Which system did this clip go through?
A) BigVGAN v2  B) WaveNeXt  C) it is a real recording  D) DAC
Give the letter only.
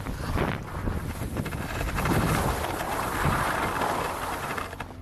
C